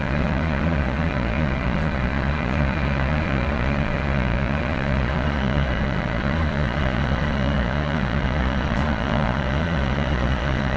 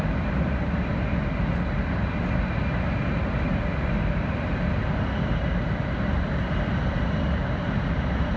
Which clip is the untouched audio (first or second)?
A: second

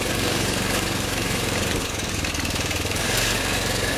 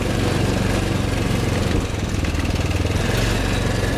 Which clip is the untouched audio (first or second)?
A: second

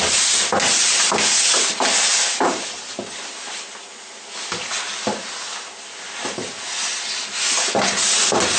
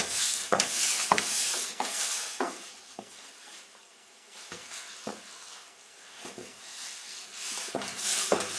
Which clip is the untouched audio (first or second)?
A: first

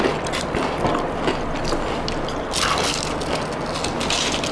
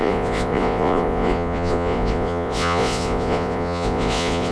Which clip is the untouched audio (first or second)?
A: first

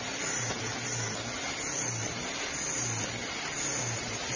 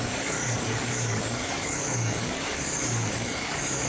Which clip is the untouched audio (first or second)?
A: first